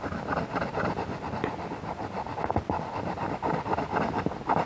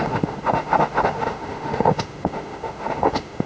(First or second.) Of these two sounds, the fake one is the second